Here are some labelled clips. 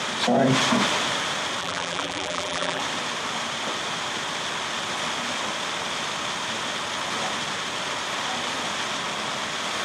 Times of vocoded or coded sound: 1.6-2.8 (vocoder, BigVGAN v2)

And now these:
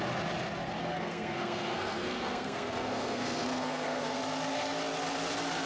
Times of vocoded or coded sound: 0.8-4.2 (codec, SNAC)

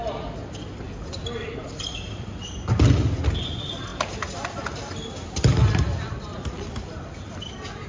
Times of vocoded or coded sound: none

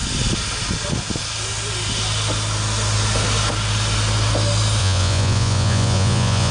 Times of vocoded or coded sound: 4.8-6.5 (vocoder, Vocos)